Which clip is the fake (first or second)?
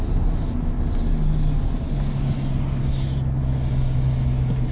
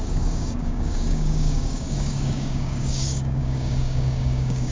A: second